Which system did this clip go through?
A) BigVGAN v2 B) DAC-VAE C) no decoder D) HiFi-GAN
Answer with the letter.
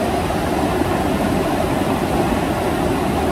C